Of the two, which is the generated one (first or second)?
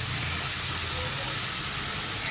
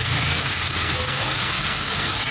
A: second